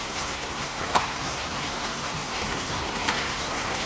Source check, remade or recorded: remade